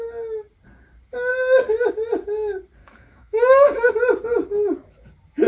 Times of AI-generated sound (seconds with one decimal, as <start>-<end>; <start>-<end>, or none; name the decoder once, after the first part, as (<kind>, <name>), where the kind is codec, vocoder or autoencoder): 2.8-3.9 (autoencoder, DAC-VAE)